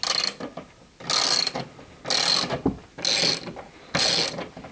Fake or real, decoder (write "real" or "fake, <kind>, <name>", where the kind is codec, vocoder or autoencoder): real